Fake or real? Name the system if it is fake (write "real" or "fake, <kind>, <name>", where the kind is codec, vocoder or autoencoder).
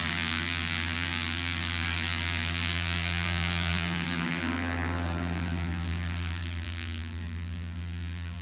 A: fake, vocoder, BigVGAN v2